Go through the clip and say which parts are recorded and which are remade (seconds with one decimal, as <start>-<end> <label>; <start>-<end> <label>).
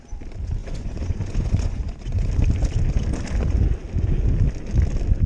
0.0-0.6 recorded; 0.6-2.3 remade; 2.3-5.3 recorded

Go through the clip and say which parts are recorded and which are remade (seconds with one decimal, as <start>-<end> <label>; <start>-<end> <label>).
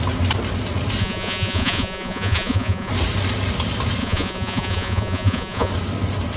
0.0-1.0 recorded; 1.0-2.9 remade; 2.9-4.0 recorded; 4.0-5.7 remade; 5.7-6.4 recorded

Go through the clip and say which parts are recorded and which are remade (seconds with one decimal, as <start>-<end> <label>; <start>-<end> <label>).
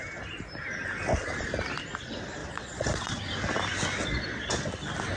0.0-2.4 recorded; 2.4-3.2 remade; 3.2-4.0 recorded; 4.0-4.7 remade; 4.7-5.2 recorded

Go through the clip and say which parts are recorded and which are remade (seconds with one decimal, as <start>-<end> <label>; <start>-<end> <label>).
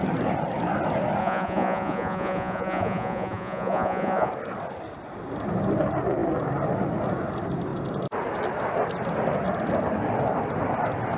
0.0-1.2 recorded; 1.2-4.3 remade; 4.3-11.2 recorded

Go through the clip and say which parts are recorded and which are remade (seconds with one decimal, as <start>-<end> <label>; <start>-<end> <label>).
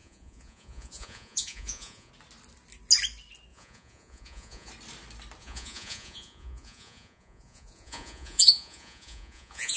0.0-2.1 remade; 2.1-3.5 recorded; 3.5-4.7 remade; 4.7-5.4 recorded; 5.4-9.8 remade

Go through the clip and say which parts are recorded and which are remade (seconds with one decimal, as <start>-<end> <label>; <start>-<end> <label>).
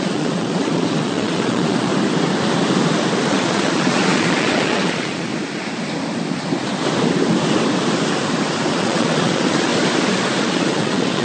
0.0-1.9 remade; 1.9-3.3 recorded; 3.3-5.3 remade; 5.3-8.7 recorded; 8.7-9.7 remade; 9.7-10.4 recorded; 10.4-11.2 remade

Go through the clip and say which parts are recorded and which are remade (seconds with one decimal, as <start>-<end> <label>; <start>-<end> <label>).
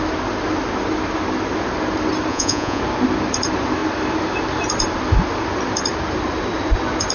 0.0-2.3 recorded; 2.3-2.8 remade; 2.8-7.1 recorded